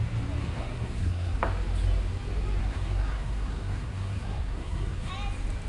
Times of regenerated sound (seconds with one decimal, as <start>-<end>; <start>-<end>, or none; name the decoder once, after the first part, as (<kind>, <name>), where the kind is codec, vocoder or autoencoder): 0.4-1.4 (codec, SNAC); 2.6-5.1